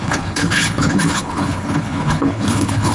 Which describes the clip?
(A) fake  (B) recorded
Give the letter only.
A